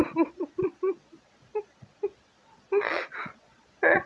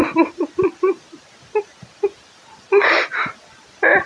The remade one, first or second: first